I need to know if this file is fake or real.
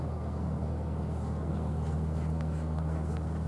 fake